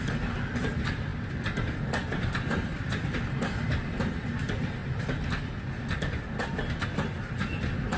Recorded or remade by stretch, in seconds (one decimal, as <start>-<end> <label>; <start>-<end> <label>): 0.0-8.0 recorded